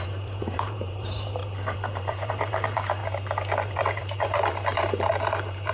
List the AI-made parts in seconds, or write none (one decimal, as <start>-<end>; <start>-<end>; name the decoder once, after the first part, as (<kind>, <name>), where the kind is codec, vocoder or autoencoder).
0.0-3.0 (vocoder, BigVGAN v2); 3.7-5.7